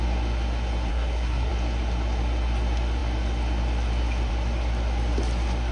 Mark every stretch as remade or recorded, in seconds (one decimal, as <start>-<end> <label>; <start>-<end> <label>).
0.0-0.9 recorded; 0.9-1.5 remade; 1.5-5.7 recorded